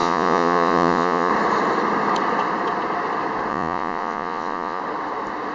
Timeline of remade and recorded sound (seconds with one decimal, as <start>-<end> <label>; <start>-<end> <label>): 0.0-1.3 remade; 1.3-3.5 recorded; 3.5-4.8 remade; 4.8-5.5 recorded